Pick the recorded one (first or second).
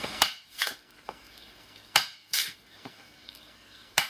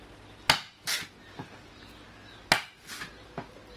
second